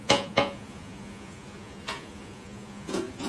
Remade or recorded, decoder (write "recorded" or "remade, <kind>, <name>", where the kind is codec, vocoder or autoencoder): remade, vocoder, Vocos